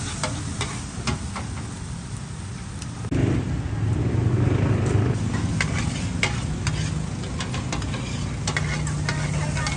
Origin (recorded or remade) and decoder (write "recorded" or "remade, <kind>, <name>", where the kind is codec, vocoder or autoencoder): recorded